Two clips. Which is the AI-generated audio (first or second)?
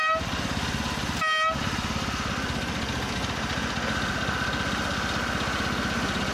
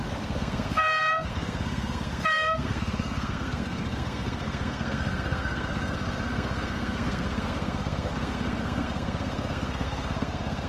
second